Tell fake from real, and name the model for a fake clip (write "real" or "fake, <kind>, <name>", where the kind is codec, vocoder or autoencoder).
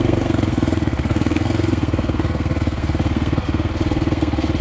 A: fake, codec, SNAC